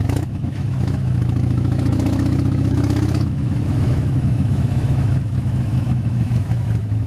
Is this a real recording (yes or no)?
no